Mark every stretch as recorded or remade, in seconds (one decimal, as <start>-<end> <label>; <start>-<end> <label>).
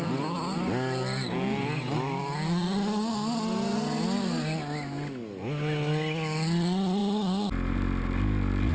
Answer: 0.0-8.7 recorded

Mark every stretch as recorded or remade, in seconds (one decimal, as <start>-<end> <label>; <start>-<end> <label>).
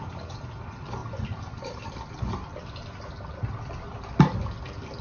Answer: 0.0-5.0 recorded